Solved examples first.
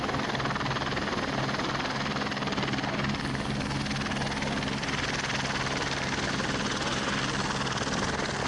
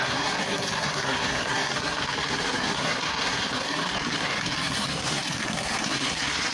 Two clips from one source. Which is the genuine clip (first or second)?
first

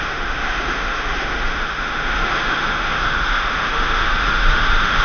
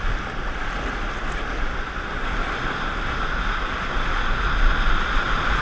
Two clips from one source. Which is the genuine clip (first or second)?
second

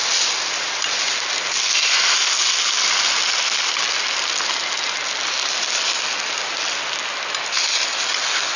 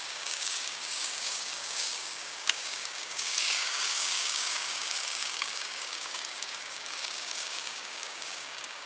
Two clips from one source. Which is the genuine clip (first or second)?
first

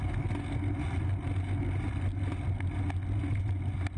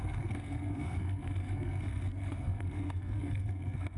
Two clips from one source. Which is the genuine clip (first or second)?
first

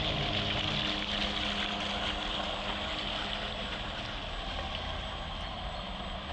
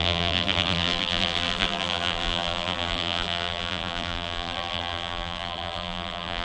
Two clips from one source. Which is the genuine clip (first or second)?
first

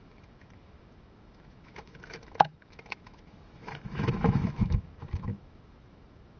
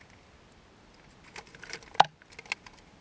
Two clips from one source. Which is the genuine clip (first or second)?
second